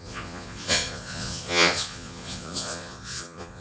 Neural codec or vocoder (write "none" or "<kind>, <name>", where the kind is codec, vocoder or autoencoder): vocoder, Vocos